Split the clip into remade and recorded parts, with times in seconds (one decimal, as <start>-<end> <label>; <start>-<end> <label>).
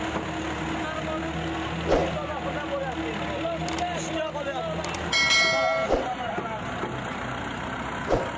0.0-8.4 recorded